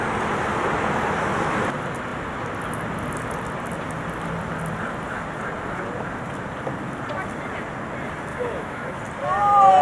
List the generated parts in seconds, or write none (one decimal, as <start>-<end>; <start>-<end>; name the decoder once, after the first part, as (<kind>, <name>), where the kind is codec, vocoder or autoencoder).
8.3-9.0 (autoencoder, DAC-VAE)